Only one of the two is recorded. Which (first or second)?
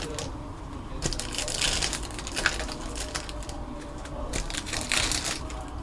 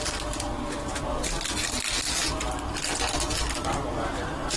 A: second